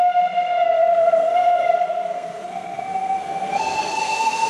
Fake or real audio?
fake